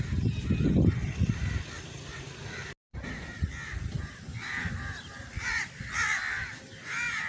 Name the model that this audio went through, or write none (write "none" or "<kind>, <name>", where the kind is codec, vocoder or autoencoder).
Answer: none